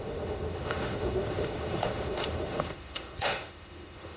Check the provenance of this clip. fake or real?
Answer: fake